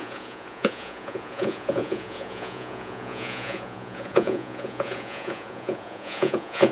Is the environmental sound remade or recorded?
remade